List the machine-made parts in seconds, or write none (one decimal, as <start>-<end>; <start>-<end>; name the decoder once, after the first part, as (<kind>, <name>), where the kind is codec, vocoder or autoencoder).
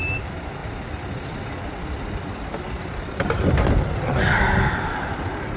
none